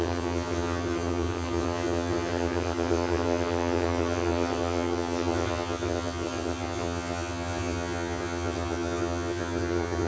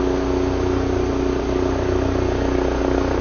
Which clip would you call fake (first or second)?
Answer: first